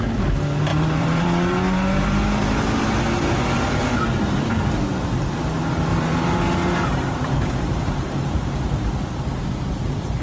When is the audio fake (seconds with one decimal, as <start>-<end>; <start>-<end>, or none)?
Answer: 0.7-3.9; 5.9-8.9